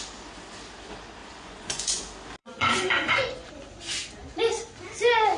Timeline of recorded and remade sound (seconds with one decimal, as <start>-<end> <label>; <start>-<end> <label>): 0.0-1.2 recorded; 1.2-2.0 remade; 2.0-2.4 recorded; 2.4-3.5 remade; 3.5-5.4 recorded